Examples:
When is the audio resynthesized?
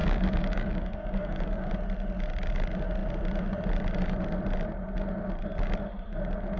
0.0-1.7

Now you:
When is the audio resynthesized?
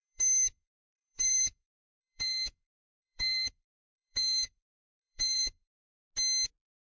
0.0-6.0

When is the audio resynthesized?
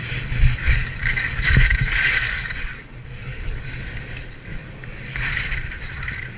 0.0-3.8; 4.5-5.3